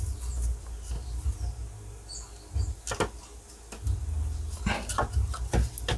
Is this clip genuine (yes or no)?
yes